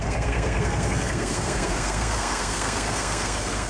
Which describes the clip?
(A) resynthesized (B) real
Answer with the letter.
A